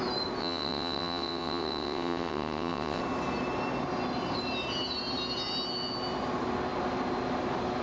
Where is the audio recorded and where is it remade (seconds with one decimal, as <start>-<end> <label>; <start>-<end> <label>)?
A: 0.0-0.4 recorded; 0.4-3.0 remade; 3.0-7.8 recorded